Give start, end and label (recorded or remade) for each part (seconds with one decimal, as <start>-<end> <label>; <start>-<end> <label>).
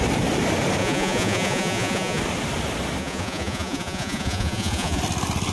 0.0-0.8 recorded; 0.8-2.2 remade; 2.2-3.0 recorded; 3.0-5.0 remade; 5.0-5.5 recorded